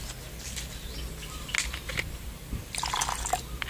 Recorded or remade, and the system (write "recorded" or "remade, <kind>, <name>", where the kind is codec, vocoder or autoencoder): recorded